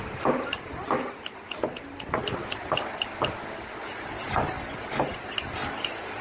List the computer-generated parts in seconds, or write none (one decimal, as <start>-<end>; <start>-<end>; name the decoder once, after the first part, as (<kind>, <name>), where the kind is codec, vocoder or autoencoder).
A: none